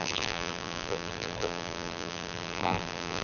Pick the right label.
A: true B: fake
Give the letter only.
B